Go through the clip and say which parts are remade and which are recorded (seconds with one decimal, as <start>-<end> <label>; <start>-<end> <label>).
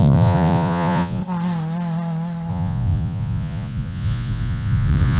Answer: 0.0-1.2 remade; 1.2-2.5 recorded; 2.5-5.2 remade